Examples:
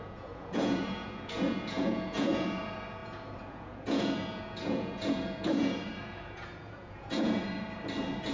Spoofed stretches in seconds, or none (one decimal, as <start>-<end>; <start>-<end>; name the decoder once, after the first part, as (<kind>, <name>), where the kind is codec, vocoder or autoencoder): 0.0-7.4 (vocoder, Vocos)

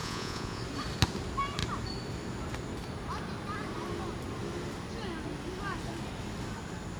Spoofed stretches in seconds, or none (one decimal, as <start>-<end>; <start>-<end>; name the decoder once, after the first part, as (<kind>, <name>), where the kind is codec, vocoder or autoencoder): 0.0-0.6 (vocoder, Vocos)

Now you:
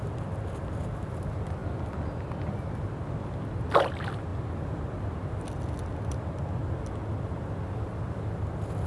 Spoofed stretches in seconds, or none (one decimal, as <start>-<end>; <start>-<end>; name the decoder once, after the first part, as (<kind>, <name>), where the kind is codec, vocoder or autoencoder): none

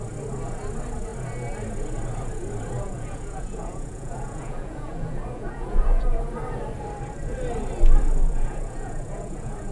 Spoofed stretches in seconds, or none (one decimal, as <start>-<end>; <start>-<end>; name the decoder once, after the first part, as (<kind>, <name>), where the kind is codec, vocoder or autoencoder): 2.8-6.2 (vocoder, Vocos); 8.2-9.7

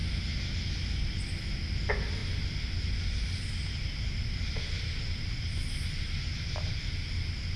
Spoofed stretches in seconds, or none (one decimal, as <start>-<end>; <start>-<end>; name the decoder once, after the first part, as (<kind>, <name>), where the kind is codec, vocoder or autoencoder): none

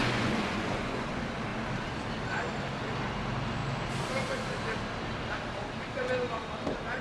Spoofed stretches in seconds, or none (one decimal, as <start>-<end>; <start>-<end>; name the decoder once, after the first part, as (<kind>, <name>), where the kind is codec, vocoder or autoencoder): 0.0-1.1 (vocoder, Vocos)

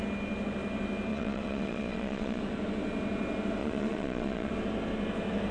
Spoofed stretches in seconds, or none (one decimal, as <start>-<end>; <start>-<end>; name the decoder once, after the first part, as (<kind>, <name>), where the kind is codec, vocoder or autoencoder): 1.1-2.4 (vocoder, Vocos); 3.6-4.5